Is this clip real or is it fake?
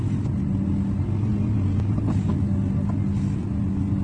real